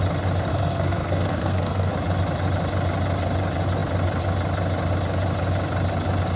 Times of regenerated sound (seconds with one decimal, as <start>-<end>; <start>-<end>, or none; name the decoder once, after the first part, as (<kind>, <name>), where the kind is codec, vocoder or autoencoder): 0.5-1.9 (codec, SNAC)